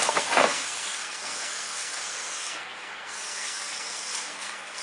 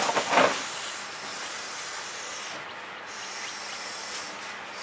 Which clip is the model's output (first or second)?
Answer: first